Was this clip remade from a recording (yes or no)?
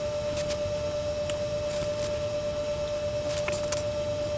no